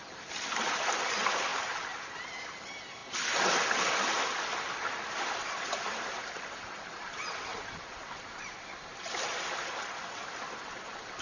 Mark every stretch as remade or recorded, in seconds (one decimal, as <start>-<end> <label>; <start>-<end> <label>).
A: 0.0-3.0 remade; 3.0-6.4 recorded; 6.4-7.5 remade; 7.5-9.0 recorded; 9.0-11.2 remade